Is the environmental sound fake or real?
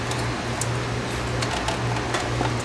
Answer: real